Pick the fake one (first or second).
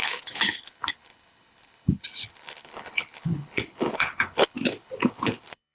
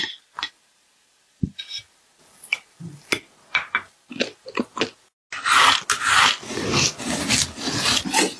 first